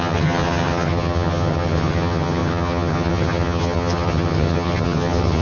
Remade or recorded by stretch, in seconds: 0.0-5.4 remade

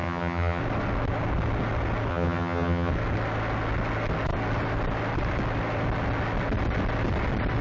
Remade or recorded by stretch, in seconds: 0.0-0.6 remade; 0.6-2.1 recorded; 2.1-2.9 remade; 2.9-7.6 recorded

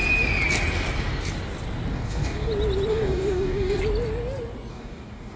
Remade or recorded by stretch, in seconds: 0.0-1.9 recorded; 1.9-2.5 remade; 2.5-2.9 recorded; 2.9-3.8 remade; 3.8-4.7 recorded; 4.7-5.4 remade

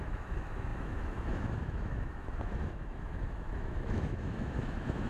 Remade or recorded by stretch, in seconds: 0.0-5.1 remade